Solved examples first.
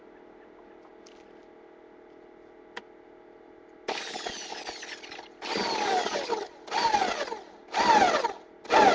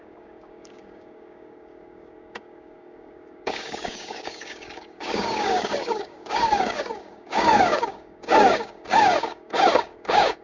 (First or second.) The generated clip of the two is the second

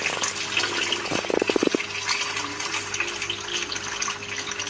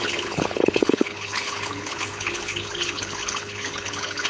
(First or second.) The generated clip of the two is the second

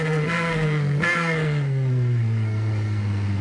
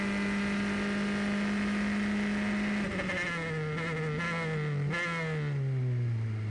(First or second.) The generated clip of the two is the first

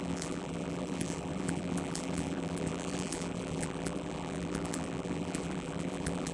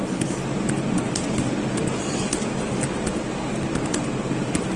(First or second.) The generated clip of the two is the first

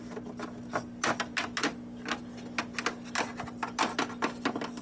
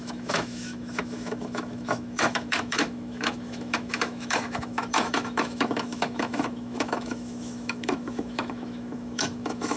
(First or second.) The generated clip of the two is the second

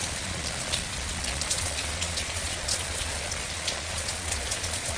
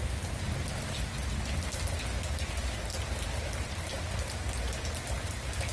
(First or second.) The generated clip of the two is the first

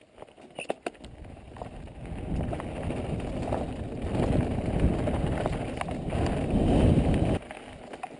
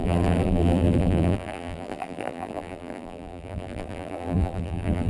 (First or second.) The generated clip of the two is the second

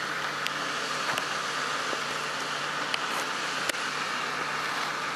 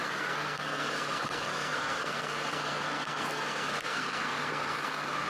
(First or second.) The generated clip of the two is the second